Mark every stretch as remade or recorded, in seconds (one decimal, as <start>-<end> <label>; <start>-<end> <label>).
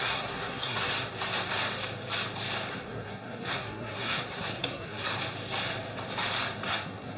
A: 0.0-0.9 remade; 0.9-2.7 recorded; 2.7-5.1 remade; 5.1-6.7 recorded; 6.7-7.2 remade